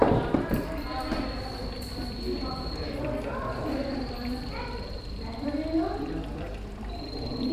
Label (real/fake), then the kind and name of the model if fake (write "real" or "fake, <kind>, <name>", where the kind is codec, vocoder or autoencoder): fake, vocoder, BigVGAN v2